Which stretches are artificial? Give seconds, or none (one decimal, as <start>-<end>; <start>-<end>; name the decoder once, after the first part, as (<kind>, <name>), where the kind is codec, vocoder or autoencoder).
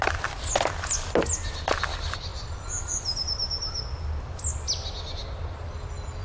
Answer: 2.3-3.8 (vocoder, BigVGAN v2)